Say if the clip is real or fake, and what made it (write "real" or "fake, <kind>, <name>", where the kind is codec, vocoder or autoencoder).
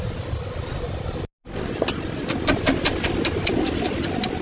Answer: real